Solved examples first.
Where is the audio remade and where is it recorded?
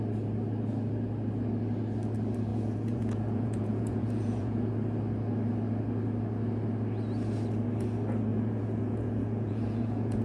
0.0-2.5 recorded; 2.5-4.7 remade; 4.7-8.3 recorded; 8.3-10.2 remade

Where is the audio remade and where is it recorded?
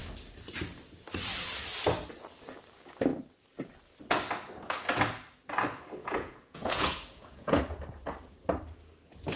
0.0-6.0 recorded; 6.0-7.6 remade; 7.6-9.4 recorded